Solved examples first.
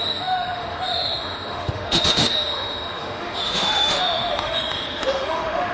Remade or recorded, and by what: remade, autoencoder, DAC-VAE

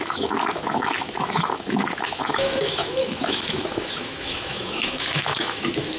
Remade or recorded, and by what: remade, autoencoder, DAC-VAE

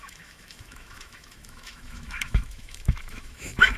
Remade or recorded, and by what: remade, autoencoder, DAC-VAE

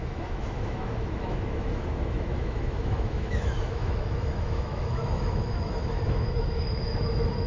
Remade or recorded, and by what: remade, autoencoder, DAC-VAE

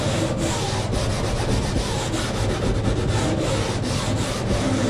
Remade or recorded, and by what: recorded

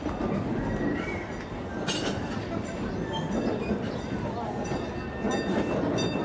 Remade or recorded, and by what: recorded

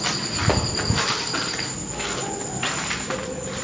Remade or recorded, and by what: recorded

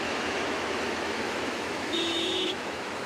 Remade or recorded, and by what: remade, autoencoder, DAC-VAE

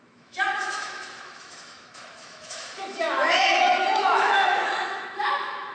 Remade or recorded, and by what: remade, autoencoder, DAC-VAE